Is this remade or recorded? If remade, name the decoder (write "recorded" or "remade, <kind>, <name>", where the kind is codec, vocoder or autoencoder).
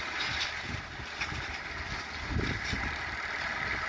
recorded